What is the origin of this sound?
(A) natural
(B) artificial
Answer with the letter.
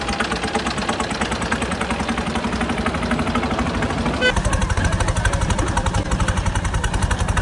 A